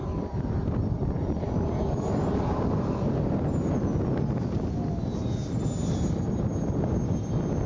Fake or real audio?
real